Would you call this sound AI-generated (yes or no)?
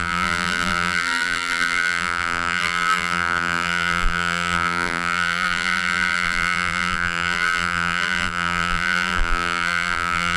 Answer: yes